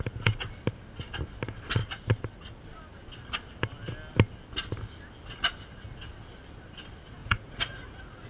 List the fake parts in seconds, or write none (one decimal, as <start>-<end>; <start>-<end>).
7.2-8.3